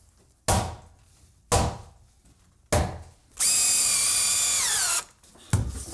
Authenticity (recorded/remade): recorded